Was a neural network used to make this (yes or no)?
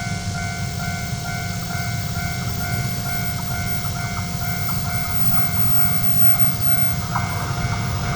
no